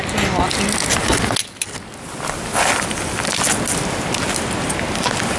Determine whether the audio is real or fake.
real